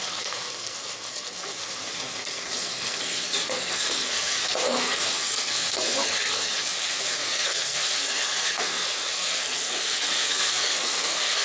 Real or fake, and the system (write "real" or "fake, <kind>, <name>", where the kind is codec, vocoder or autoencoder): fake, codec, SNAC